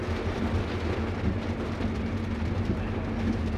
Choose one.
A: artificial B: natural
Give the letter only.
B